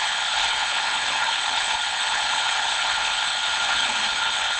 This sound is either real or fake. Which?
fake